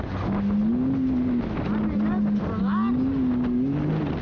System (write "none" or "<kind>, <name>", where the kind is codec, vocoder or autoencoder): none